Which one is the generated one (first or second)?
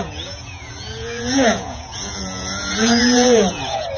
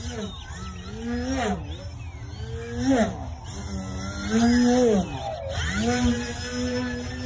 first